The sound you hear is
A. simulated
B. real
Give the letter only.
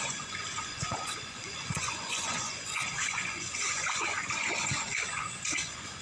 A